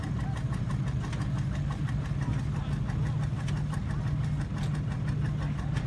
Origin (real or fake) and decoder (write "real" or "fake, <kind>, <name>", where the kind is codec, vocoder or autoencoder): real